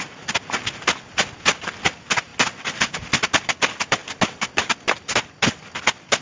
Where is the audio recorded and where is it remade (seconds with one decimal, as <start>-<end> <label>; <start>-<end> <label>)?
0.0-6.2 recorded